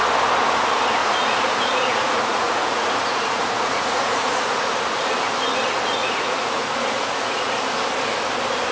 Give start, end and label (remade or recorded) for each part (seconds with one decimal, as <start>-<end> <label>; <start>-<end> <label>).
0.0-1.0 recorded; 1.0-4.7 remade; 4.7-6.0 recorded; 6.0-7.6 remade; 7.6-8.7 recorded